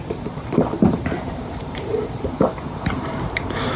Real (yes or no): no